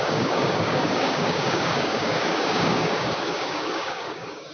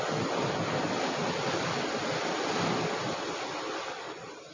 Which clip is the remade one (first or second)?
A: first